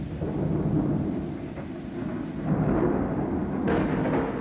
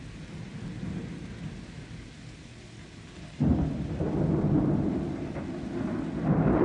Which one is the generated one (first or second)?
second